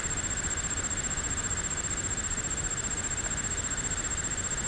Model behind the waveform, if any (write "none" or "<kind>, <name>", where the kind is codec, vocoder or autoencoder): none